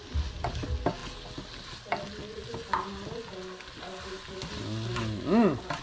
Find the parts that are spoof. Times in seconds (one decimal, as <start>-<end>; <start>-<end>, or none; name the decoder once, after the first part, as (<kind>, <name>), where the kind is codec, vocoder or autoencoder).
none